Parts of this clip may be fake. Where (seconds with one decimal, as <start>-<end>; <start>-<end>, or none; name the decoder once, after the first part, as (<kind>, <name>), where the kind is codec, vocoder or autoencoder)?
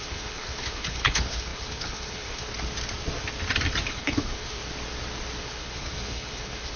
0.0-2.5 (codec, HILCodec); 3.9-4.6; 5.4-6.8